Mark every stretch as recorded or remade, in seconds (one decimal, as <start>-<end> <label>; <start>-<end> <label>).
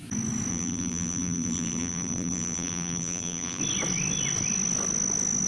0.0-0.5 recorded; 0.5-3.6 remade; 3.6-5.5 recorded